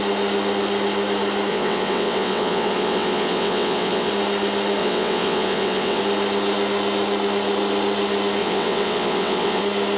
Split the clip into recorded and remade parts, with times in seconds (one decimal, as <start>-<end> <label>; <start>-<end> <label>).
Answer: 0.0-1.5 recorded; 1.5-4.1 remade; 4.1-4.8 recorded; 4.8-6.0 remade; 6.0-8.4 recorded; 8.4-9.6 remade; 9.6-10.0 recorded